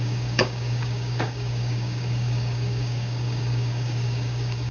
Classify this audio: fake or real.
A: fake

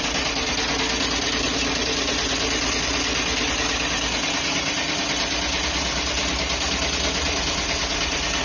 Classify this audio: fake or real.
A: real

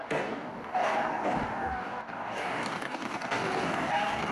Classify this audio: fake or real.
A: fake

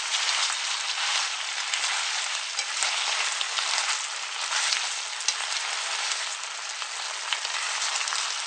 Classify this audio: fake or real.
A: real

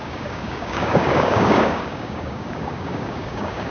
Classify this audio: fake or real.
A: fake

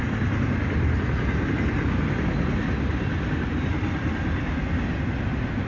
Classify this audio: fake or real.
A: real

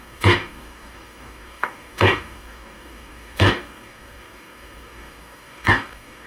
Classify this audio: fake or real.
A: fake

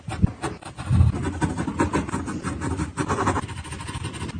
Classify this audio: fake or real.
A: real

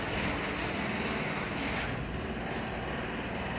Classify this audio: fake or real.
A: real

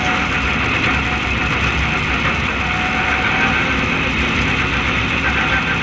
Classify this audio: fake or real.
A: real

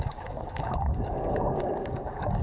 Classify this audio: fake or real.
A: fake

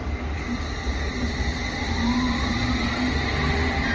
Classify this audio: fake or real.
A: real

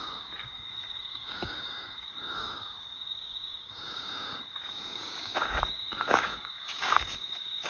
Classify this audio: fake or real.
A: fake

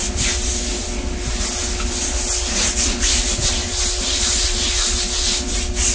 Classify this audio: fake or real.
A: real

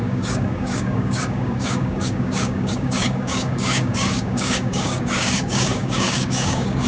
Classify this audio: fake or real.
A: fake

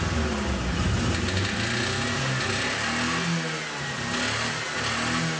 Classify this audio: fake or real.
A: real